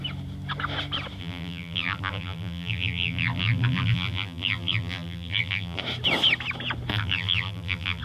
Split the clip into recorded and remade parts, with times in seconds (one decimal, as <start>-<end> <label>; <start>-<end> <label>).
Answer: 0.0-1.2 recorded; 1.2-5.8 remade; 5.8-6.9 recorded; 6.9-8.0 remade